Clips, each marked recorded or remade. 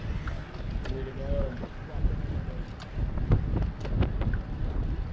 recorded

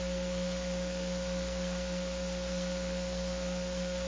remade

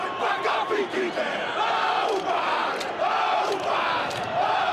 remade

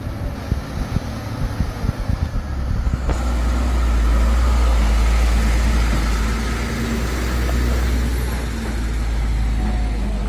recorded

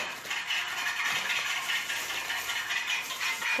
recorded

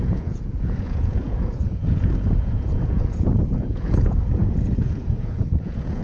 remade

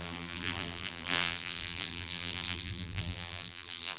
remade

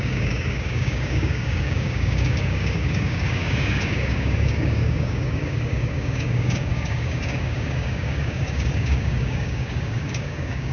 remade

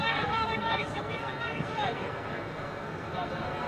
remade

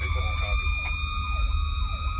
recorded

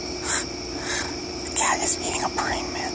recorded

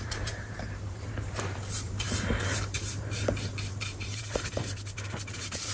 remade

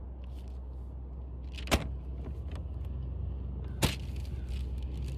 recorded